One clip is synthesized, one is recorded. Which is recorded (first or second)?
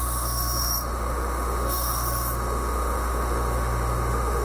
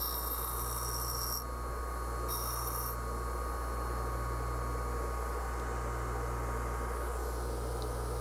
second